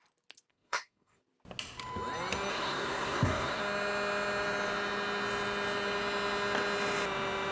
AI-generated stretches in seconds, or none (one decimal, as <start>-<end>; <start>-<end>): 0.5-1.2; 2.5-3.6